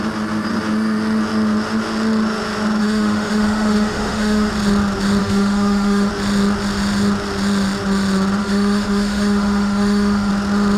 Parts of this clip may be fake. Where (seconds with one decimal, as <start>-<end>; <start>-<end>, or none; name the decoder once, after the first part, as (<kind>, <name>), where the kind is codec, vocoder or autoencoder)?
2.8-4.5 (autoencoder, DAC-VAE); 5.2-6.1; 8.4-10.3